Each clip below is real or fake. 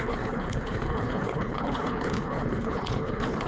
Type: fake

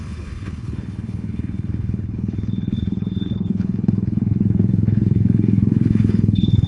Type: fake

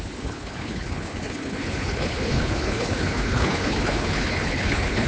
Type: fake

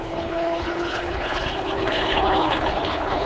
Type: fake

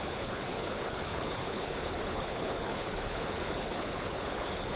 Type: fake